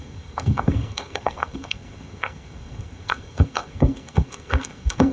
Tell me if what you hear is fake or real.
fake